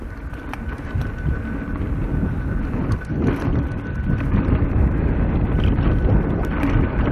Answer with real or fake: real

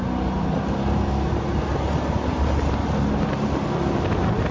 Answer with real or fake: real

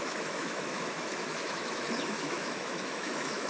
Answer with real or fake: fake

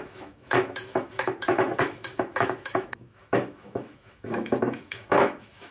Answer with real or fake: fake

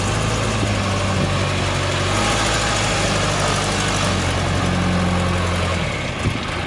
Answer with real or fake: real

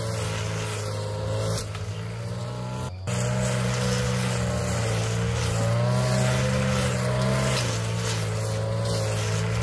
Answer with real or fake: real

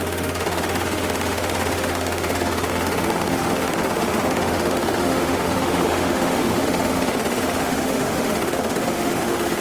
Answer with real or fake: fake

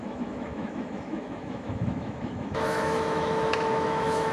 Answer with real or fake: fake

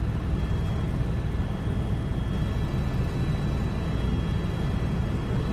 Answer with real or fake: real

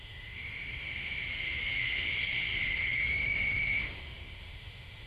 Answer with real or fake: fake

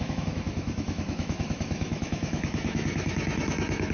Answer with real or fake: fake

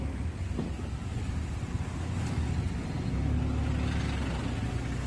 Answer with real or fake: real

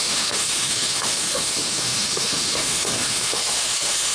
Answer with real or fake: fake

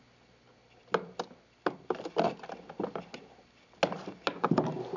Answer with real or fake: real